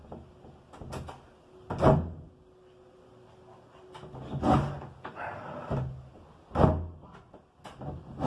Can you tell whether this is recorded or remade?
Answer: recorded